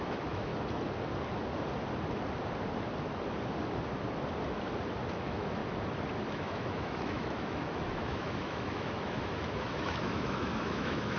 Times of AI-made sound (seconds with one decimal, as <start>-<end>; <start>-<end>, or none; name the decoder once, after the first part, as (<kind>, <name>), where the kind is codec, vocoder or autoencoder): 0.0-0.5 (autoencoder, DAC-VAE); 5.1-5.6; 6.3-11.2